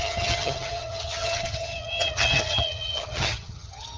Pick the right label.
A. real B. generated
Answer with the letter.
B